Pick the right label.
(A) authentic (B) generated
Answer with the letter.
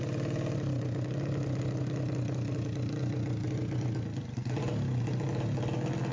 A